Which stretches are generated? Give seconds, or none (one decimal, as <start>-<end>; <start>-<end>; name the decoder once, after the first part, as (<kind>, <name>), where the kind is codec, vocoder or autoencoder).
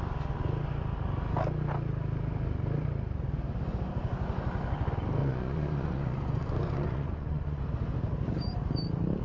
5.2-7.6 (vocoder, Vocos)